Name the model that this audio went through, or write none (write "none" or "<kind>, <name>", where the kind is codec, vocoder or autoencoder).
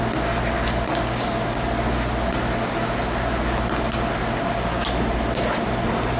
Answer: none